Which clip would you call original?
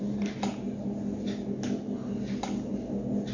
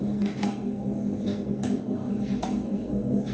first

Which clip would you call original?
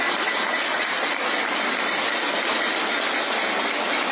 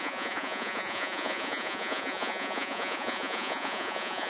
first